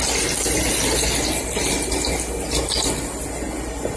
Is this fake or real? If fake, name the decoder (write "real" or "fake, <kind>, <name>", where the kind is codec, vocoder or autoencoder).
real